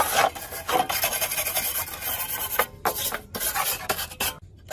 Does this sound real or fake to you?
real